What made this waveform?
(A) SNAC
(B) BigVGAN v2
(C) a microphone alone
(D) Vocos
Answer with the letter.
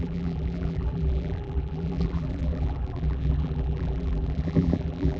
B